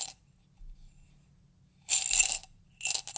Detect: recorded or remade recorded